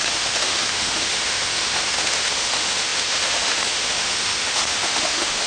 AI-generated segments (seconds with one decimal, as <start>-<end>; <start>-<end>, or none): 0.0-5.5